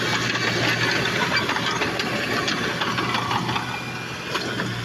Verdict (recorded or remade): recorded